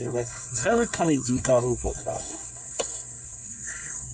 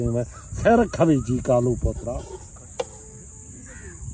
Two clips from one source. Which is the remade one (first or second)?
first